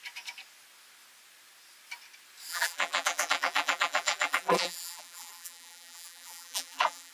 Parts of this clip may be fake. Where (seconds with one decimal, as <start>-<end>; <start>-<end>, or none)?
2.5-7.1